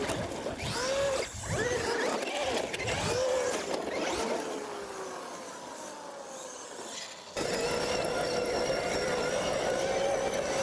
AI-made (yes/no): no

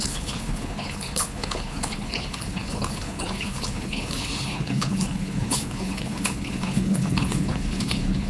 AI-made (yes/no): yes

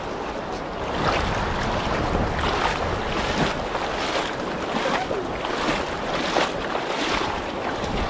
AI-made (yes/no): no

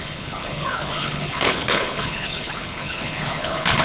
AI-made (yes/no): yes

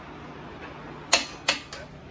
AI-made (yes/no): no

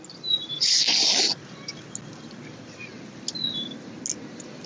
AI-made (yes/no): no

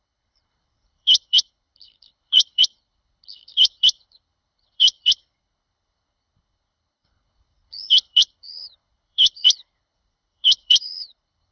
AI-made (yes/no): yes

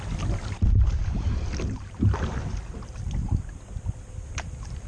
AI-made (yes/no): no